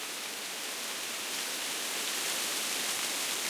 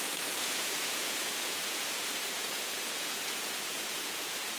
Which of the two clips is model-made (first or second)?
second